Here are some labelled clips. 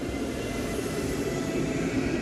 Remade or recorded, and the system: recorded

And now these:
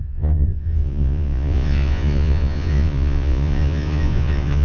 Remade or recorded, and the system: remade, vocoder, Vocos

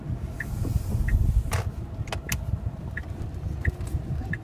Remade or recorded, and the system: recorded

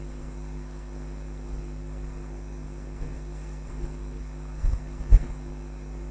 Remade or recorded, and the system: remade, codec, SNAC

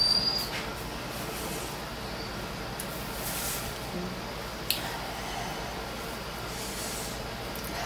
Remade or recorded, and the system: recorded